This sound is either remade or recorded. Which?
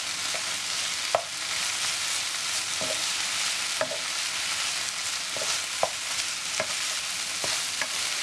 recorded